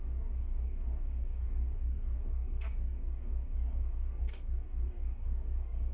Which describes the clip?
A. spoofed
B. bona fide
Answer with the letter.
A